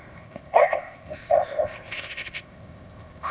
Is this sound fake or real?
fake